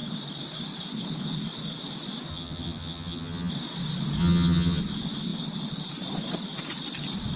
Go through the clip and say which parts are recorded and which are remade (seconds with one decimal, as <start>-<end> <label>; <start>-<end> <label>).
0.0-2.3 recorded; 2.3-3.5 remade; 3.5-4.2 recorded; 4.2-4.8 remade; 4.8-7.4 recorded